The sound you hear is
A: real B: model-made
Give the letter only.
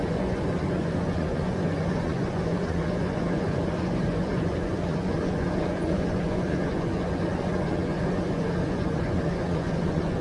B